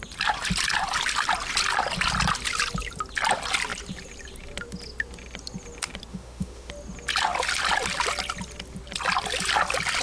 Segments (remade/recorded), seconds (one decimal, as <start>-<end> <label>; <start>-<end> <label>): 0.0-6.1 recorded; 6.1-6.7 remade; 6.7-10.0 recorded